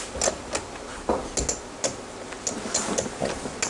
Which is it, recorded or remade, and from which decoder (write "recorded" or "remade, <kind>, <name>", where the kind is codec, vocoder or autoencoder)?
recorded